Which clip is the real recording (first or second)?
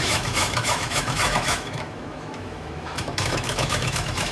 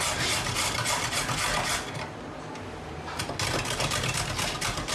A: second